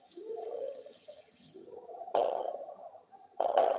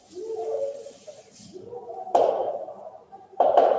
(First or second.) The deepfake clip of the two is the first